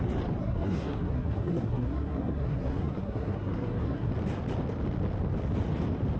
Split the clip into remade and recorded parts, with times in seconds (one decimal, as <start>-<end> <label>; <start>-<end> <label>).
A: 0.0-0.4 recorded; 0.4-4.1 remade; 4.1-6.2 recorded